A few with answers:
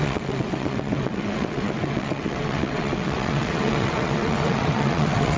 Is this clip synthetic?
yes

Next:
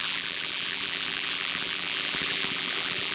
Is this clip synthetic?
yes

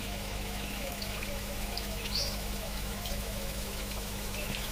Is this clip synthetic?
yes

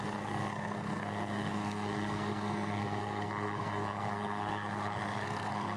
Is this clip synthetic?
yes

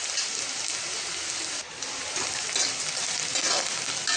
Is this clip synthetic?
no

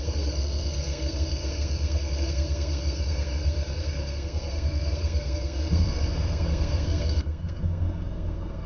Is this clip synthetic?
yes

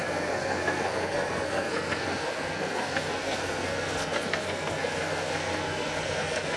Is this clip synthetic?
yes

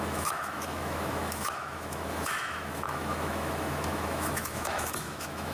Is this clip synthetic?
yes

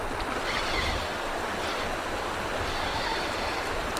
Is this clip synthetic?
no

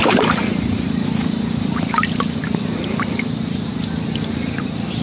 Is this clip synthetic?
no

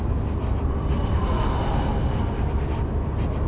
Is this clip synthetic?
no